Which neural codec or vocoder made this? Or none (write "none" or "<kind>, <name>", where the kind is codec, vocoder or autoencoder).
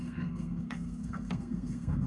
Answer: codec, SNAC